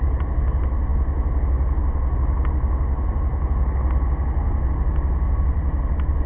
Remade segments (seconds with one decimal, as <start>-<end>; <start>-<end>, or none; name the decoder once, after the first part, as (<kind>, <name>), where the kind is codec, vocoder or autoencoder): none

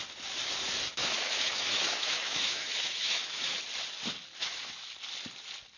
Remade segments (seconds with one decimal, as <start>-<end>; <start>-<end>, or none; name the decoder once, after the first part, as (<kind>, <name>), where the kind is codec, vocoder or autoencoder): 1.0-3.6 (autoencoder, DAC-VAE); 4.4-4.9

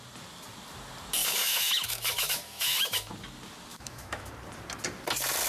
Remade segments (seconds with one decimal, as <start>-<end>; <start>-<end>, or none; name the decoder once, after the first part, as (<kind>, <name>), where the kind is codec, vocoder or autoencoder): 1.2-3.1 (autoencoder, DAC-VAE); 3.7-4.3

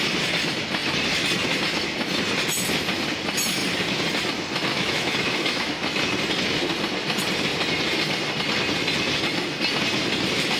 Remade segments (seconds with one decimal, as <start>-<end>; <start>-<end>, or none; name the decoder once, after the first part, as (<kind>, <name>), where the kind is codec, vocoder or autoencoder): 4.7-6.1 (autoencoder, DAC-VAE)